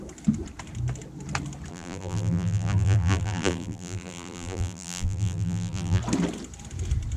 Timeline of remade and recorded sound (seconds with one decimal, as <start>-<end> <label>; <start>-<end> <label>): 0.0-1.7 recorded; 1.7-6.0 remade; 6.0-7.2 recorded